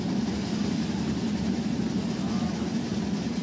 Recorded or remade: recorded